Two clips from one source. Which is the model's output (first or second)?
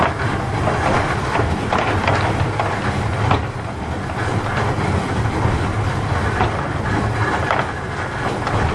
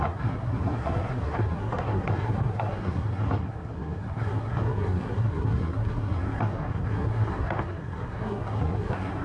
second